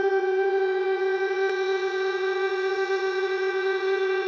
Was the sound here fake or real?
fake